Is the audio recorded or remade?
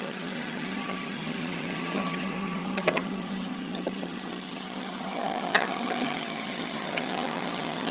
remade